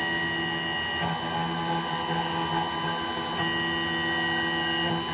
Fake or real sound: real